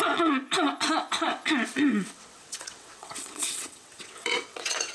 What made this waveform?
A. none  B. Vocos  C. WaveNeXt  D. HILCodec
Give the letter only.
C